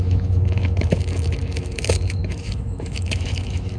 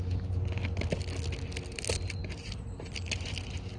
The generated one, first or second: first